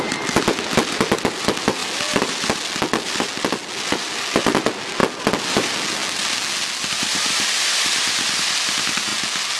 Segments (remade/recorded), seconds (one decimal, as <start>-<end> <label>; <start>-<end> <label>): 0.0-9.6 recorded